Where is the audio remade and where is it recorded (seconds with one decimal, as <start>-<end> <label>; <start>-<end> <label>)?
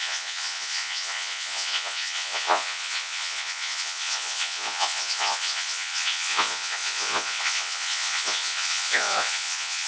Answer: 0.0-9.9 remade